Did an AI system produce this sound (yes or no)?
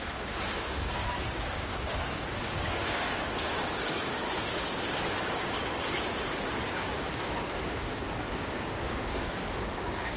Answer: yes